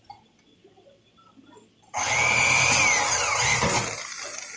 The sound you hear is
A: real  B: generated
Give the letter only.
A